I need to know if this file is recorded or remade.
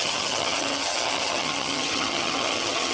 remade